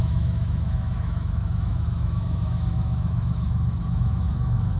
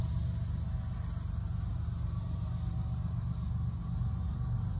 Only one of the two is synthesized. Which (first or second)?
first